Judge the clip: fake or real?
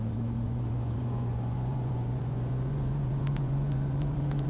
fake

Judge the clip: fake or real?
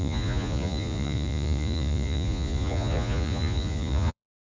fake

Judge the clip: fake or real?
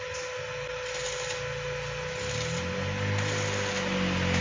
real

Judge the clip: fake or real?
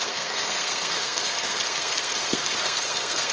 fake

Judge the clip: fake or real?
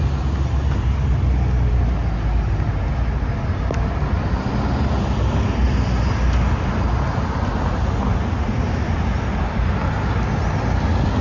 real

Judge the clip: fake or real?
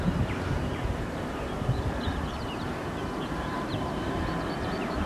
fake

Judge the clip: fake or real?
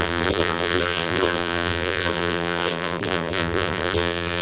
fake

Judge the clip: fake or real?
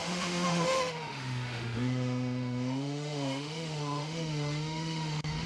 fake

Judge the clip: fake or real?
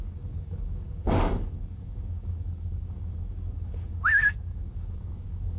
fake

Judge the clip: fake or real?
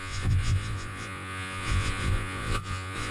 fake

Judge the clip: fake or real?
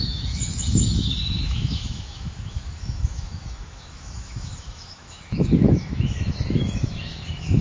fake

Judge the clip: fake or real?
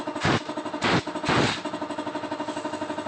real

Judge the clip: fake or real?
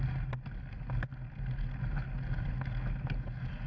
real